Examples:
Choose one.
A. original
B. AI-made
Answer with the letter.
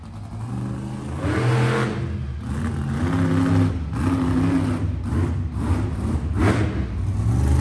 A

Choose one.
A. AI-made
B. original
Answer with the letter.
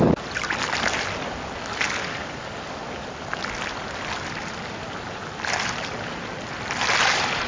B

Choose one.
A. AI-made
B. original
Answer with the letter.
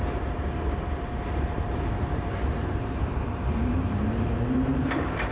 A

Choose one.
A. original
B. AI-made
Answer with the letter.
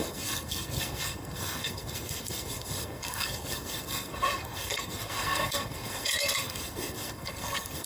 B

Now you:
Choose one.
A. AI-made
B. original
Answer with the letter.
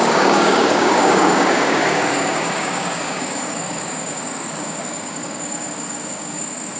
A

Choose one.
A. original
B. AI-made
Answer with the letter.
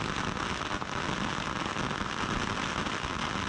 A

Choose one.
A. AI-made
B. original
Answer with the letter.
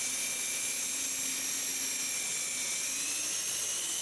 B